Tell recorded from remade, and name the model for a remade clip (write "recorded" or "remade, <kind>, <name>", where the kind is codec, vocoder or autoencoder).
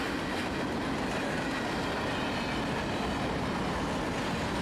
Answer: recorded